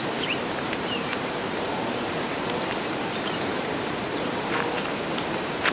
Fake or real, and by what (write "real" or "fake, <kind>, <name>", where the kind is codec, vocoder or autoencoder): fake, vocoder, BigVGAN v2